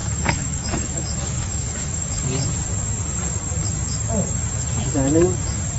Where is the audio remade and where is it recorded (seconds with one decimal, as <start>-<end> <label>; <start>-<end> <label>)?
0.0-2.2 remade; 2.2-5.8 recorded